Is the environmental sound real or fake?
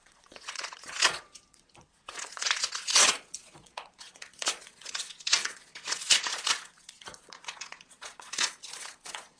fake